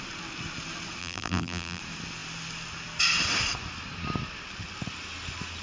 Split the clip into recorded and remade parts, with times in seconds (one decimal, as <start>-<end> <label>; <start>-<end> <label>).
0.0-1.0 recorded; 1.0-1.8 remade; 1.8-5.6 recorded